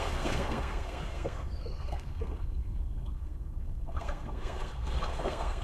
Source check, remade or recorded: remade